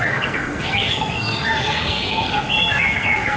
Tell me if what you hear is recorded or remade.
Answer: remade